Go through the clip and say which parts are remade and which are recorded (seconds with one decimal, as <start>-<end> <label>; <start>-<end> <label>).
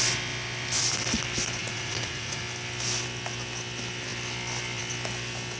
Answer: 0.0-1.6 recorded; 1.6-2.4 remade; 2.4-5.6 recorded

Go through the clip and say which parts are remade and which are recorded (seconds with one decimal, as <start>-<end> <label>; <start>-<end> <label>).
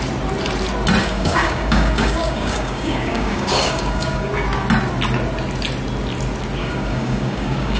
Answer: 0.0-1.0 recorded; 1.0-4.3 remade; 4.3-6.6 recorded; 6.6-7.8 remade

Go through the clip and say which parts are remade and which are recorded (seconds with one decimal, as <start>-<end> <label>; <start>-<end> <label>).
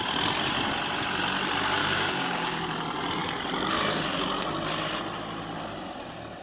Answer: 0.0-1.8 recorded; 1.8-2.7 remade; 2.7-6.4 recorded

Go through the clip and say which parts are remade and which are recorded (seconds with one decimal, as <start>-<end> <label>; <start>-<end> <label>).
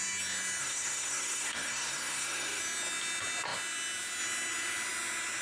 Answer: 0.0-0.6 recorded; 0.6-2.6 remade; 2.6-5.4 recorded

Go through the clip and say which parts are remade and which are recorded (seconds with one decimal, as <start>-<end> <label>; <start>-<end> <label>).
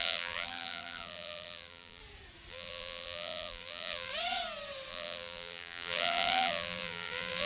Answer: 0.0-2.0 remade; 2.0-2.5 recorded; 2.5-4.1 remade; 4.1-4.9 recorded; 4.9-7.5 remade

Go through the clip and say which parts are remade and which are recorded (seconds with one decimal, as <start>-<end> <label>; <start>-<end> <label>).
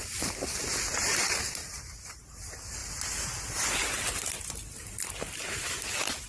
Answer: 0.0-6.3 recorded